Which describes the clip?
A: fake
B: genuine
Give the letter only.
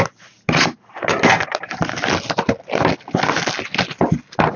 B